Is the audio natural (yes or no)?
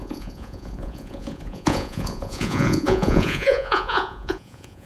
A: no